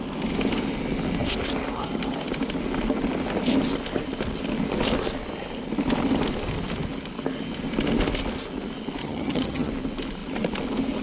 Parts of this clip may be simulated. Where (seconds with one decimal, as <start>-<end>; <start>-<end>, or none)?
9.0-9.7